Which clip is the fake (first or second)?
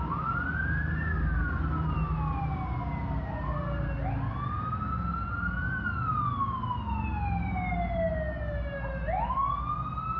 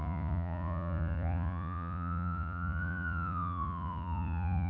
second